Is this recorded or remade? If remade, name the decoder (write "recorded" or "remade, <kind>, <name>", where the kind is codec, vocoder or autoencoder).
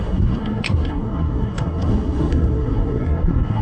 remade, codec, SNAC